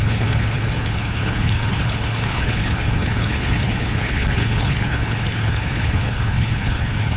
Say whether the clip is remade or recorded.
remade